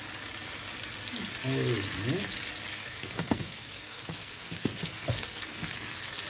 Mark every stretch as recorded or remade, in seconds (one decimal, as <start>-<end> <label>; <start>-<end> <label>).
0.0-2.7 recorded; 2.7-6.3 remade